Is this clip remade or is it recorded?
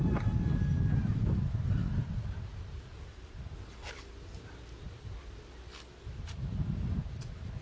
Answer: recorded